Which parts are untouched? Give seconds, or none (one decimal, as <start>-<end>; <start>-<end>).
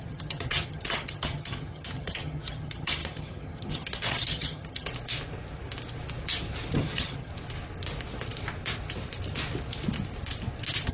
4.9-6.8; 7.3-10.9